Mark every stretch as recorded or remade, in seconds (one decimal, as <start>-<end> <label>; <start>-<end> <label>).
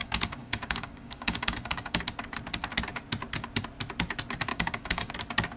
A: 0.0-2.0 remade; 2.0-4.5 recorded; 4.5-5.1 remade; 5.1-5.6 recorded